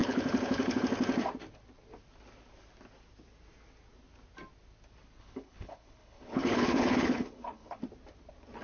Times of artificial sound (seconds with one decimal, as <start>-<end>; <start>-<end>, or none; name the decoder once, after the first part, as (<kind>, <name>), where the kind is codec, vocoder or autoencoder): 0.0-0.8 (codec, HILCodec); 5.2-7.8